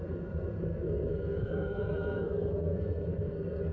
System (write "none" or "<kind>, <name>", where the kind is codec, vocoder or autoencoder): codec, SNAC